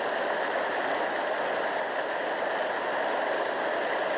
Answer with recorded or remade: recorded